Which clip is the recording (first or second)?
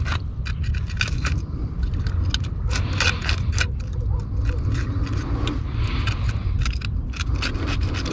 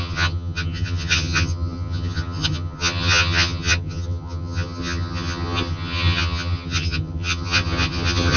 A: first